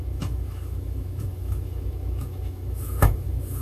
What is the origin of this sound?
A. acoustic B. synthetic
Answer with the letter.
B